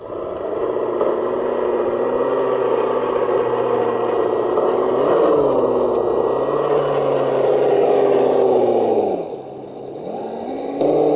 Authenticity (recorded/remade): recorded